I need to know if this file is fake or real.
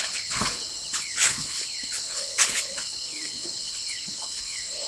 fake